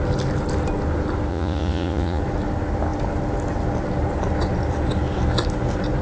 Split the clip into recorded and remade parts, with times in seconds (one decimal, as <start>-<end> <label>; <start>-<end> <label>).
0.0-1.3 recorded; 1.3-2.2 remade; 2.2-6.0 recorded